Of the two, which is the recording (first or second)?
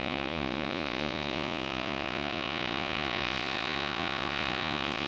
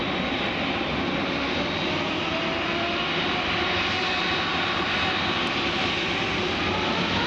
second